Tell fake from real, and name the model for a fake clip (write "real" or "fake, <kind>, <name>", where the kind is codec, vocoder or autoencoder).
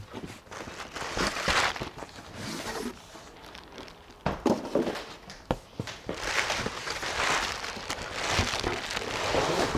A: real